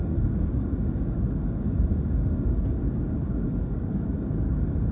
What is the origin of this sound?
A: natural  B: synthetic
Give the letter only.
B